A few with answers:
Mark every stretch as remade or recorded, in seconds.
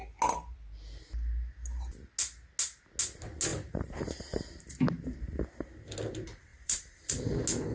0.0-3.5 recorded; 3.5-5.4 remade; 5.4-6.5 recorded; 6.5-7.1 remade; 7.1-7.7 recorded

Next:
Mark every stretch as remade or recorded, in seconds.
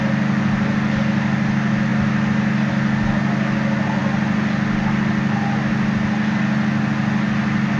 0.0-7.8 recorded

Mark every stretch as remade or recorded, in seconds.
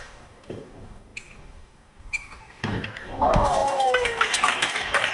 0.0-5.1 remade